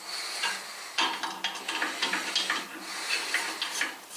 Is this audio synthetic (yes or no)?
no